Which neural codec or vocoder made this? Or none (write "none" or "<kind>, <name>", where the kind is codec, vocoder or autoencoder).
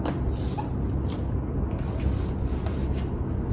none